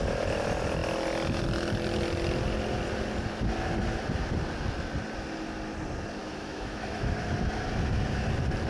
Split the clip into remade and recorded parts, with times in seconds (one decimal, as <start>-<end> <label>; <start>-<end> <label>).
0.0-6.2 recorded; 6.2-7.1 remade; 7.1-8.7 recorded